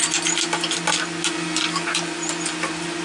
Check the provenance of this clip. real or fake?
real